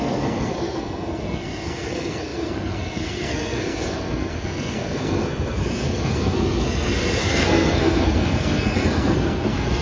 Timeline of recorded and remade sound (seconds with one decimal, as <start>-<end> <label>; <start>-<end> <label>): 0.0-9.8 remade